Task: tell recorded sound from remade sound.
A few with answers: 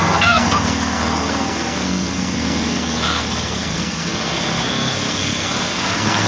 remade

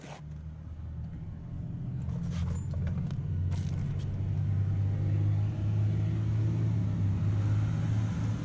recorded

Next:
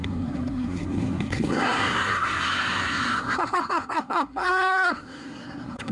remade